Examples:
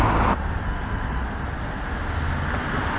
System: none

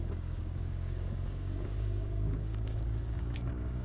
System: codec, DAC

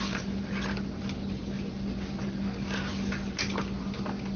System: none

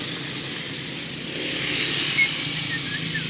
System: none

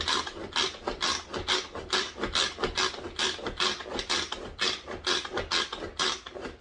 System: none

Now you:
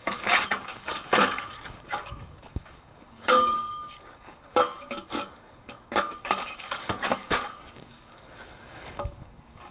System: codec, DAC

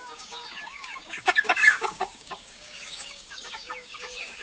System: codec, DAC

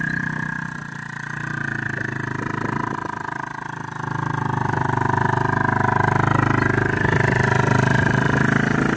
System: none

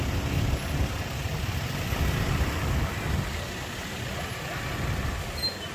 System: none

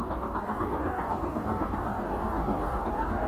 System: codec, DAC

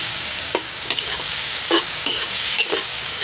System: codec, DAC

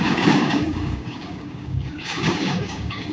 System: codec, DAC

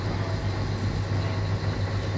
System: none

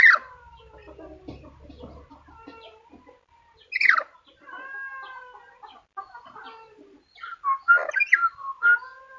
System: none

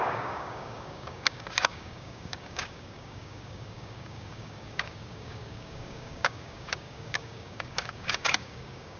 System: codec, DAC